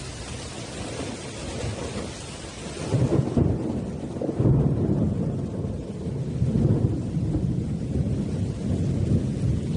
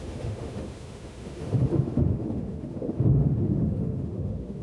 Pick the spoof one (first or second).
second